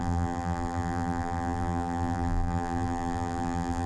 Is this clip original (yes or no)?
no